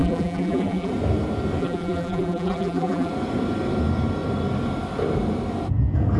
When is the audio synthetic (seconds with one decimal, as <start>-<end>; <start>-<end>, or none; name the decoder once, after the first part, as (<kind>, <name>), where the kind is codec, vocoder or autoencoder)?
0.0-0.9 (vocoder, BigVGAN v2); 1.6-3.1